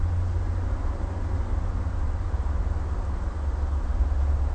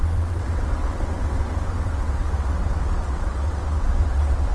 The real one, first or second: first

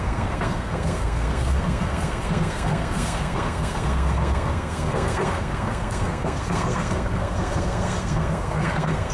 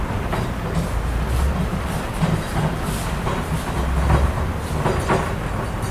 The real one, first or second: second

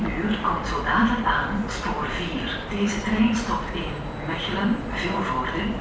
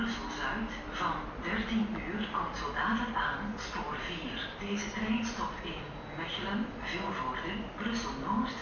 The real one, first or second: second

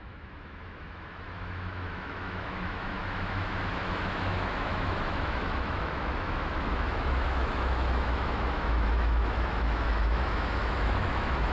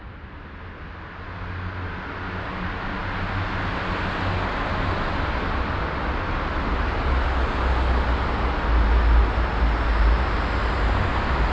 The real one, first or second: second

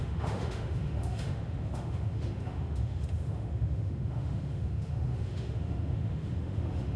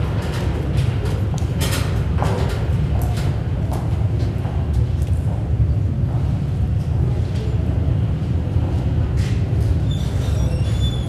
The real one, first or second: second